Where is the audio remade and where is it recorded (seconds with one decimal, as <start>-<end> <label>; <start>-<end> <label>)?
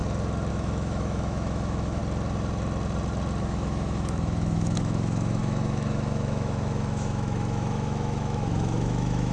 0.0-0.5 recorded; 0.5-2.0 remade; 2.0-3.4 recorded; 3.4-9.3 remade